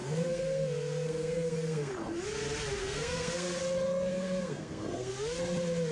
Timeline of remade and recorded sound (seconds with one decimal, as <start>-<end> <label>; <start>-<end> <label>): 0.0-1.9 remade; 1.9-2.8 recorded; 2.8-3.6 remade; 3.6-4.1 recorded; 4.1-5.1 remade; 5.1-5.9 recorded